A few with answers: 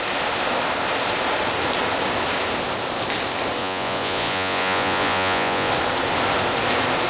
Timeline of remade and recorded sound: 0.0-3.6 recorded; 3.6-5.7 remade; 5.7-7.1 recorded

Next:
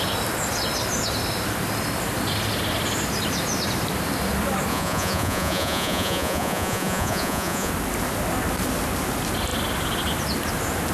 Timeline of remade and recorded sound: 0.0-4.7 recorded; 4.7-7.7 remade; 7.7-10.9 recorded

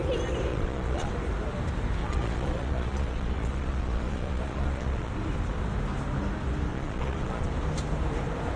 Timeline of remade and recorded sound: 0.0-0.5 recorded; 0.5-1.1 remade; 1.1-2.0 recorded; 2.0-5.1 remade; 5.1-6.7 recorded; 6.7-7.5 remade; 7.5-8.6 recorded

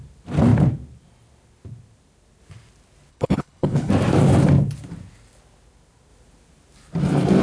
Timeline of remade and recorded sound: 0.0-3.1 recorded; 3.1-3.9 remade; 3.9-7.4 recorded

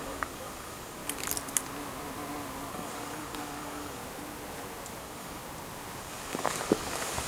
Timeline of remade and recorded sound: 0.0-1.0 remade; 1.0-2.7 recorded; 2.7-4.0 remade; 4.0-5.0 recorded; 5.0-5.4 remade; 5.4-6.0 recorded; 6.0-7.3 remade

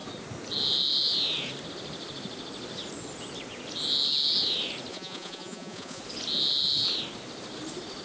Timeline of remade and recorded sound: 0.0-4.9 recorded; 4.9-6.0 remade; 6.0-8.0 recorded